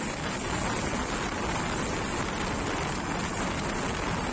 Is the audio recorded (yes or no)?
yes